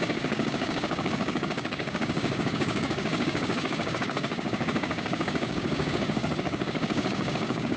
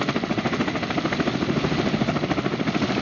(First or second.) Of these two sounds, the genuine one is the second